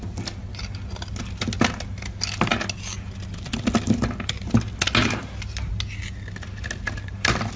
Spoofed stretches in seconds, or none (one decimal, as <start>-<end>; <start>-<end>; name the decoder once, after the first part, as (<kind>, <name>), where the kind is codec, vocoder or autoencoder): none